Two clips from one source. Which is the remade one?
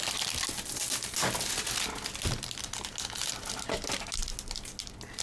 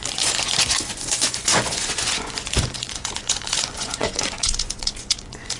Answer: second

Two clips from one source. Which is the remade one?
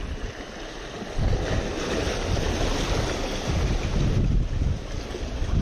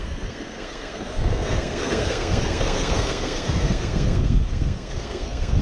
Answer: second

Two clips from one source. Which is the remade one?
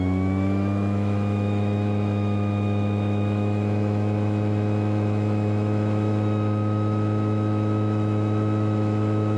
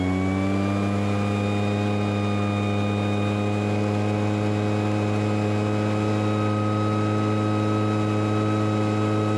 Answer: first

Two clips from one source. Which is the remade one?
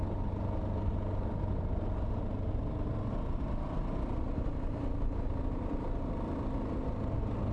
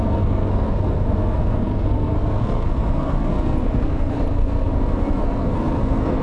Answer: second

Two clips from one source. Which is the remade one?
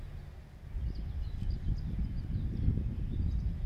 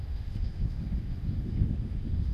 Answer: second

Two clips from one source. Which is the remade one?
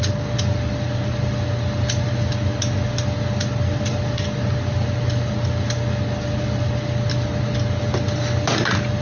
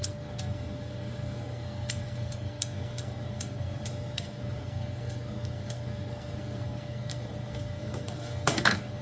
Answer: second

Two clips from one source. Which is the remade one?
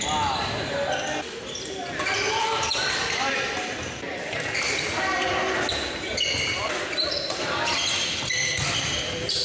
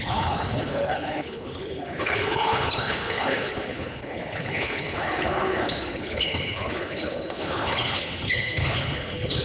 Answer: second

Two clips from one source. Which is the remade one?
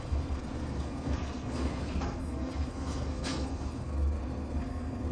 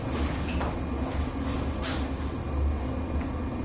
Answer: first